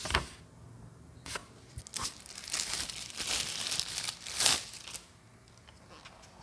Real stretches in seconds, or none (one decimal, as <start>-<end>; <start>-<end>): 0.0-6.4